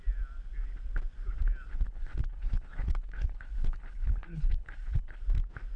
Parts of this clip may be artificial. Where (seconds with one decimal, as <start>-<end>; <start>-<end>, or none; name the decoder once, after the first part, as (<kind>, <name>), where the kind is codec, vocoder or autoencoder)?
1.7-5.2 (codec, HILCodec)